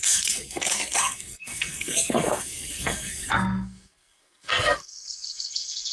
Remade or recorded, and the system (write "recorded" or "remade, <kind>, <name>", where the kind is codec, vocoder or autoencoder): remade, codec, SNAC